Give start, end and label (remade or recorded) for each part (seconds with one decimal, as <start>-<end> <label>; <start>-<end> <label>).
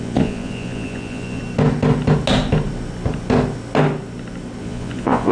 0.0-1.4 remade; 1.4-4.6 recorded; 4.6-5.3 remade